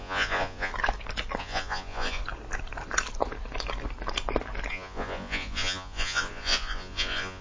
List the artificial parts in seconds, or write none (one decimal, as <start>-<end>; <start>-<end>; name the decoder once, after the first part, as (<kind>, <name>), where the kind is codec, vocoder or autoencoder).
0.0-0.7 (vocoder, Vocos); 1.4-2.2; 4.7-7.4